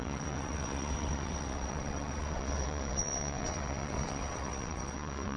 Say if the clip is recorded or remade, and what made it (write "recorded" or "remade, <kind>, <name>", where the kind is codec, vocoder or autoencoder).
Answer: remade, vocoder, WaveNeXt